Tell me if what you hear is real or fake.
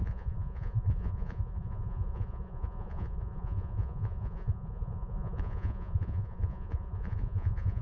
fake